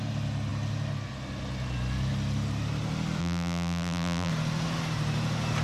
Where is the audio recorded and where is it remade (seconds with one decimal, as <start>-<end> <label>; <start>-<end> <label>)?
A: 0.0-3.2 recorded; 3.2-4.3 remade; 4.3-5.6 recorded